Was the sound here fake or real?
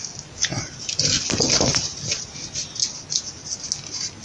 real